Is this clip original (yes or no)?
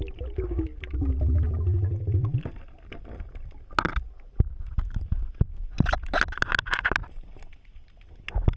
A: yes